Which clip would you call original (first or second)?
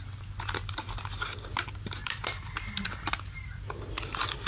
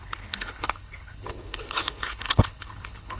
first